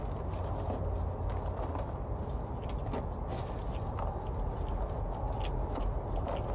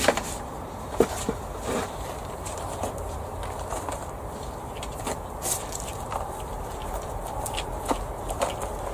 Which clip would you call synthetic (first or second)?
second